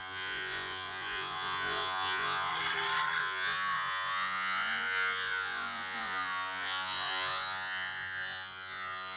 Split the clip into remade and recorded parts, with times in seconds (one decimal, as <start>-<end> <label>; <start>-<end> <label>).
0.0-2.5 remade; 2.5-3.2 recorded; 3.2-9.2 remade